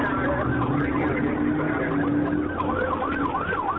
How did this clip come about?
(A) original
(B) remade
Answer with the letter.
A